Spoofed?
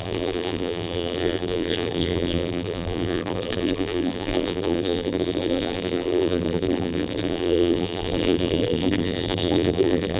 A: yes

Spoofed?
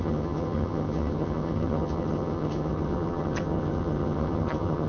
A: yes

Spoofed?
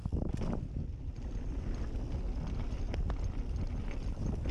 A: no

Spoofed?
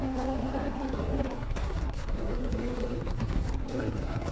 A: yes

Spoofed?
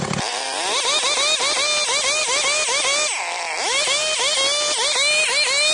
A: no